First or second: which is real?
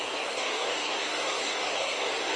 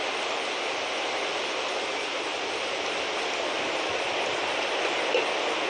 second